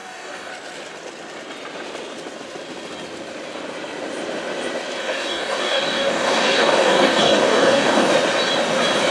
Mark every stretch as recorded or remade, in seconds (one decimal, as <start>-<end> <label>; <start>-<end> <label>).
0.0-0.5 remade; 0.5-5.0 recorded; 5.0-8.1 remade; 8.1-9.1 recorded